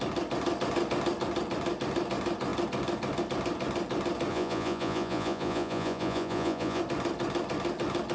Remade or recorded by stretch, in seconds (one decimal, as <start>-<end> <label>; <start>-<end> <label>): 0.0-4.3 recorded; 4.3-6.8 remade; 6.8-8.1 recorded